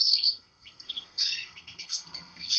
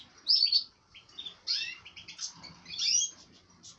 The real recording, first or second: second